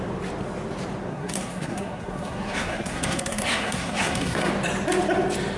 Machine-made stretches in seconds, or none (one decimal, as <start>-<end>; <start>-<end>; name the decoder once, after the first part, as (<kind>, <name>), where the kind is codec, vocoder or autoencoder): 1.1-4.5 (codec, SNAC)